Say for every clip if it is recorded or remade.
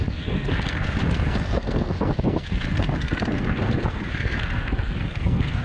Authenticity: remade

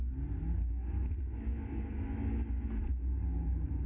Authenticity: recorded